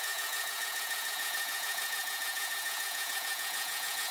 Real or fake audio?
fake